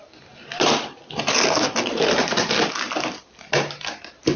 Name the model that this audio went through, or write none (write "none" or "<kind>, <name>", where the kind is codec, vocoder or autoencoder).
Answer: none